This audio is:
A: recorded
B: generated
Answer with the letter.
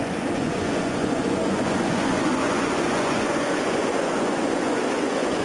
B